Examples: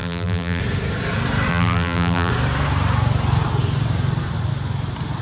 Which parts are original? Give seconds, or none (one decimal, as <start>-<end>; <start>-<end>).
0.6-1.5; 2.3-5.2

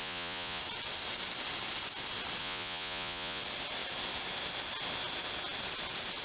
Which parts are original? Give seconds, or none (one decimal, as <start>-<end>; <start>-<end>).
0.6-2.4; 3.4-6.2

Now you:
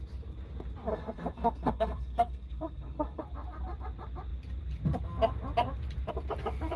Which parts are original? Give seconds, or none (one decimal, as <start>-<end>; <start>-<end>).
0.0-0.9; 3.2-6.8

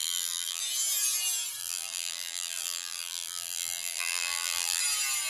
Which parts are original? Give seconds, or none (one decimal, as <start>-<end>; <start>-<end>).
0.6-1.6; 4.8-5.3

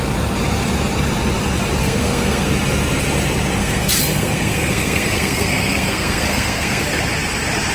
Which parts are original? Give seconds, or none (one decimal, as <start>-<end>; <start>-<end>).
0.0-1.8; 2.5-3.6; 6.8-7.7

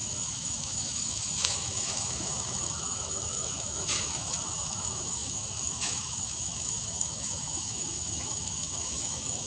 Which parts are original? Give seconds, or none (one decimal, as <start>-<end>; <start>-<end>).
none

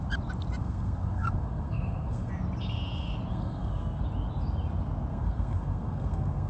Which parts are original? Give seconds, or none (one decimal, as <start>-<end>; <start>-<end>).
0.0-0.6; 2.3-3.3; 4.0-5.1

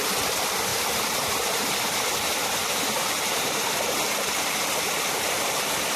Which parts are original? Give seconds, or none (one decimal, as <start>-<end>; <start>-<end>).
0.0-0.7; 4.3-6.0